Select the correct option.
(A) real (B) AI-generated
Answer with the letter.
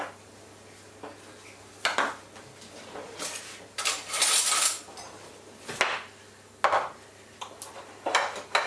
A